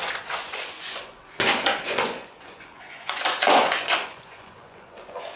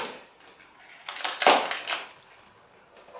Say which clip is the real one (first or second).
second